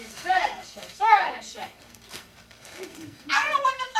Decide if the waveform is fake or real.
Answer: fake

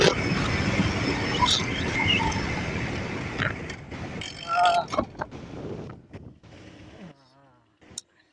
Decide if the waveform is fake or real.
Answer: real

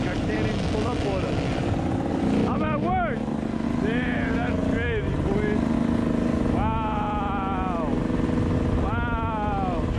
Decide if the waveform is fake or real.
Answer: real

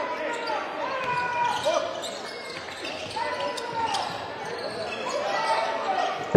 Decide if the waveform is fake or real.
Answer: real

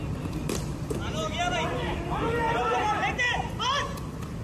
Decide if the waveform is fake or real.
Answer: real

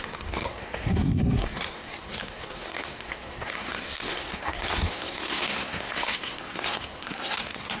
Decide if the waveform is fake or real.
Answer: fake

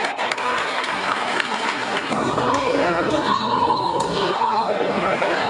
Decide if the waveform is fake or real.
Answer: fake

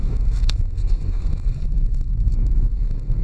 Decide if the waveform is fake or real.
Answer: fake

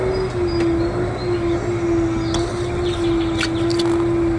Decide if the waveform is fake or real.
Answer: real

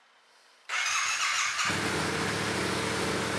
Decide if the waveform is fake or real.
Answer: real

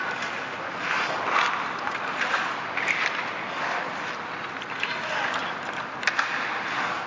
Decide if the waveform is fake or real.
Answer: real